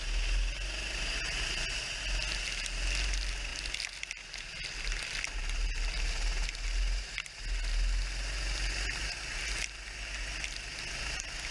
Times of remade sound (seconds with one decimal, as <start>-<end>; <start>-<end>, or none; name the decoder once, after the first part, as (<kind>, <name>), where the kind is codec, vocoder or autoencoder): none